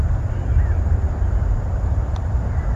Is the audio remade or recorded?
remade